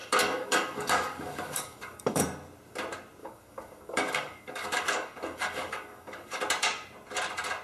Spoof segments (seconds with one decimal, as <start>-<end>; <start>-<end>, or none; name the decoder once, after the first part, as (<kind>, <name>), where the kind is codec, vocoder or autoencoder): 0.0-2.2 (codec, DAC); 3.2-6.4